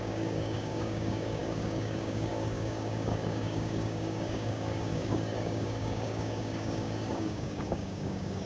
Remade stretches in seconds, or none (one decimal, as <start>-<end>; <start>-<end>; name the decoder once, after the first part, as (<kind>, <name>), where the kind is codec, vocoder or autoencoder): 0.0-8.5 (codec, DAC)